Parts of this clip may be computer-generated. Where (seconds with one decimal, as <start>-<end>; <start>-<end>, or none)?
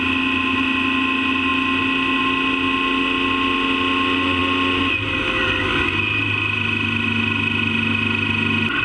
none